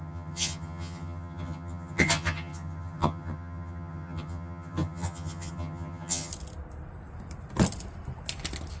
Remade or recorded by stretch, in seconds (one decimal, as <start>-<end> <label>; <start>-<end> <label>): 0.0-6.3 remade; 6.3-8.8 recorded